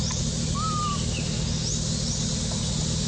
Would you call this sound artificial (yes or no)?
no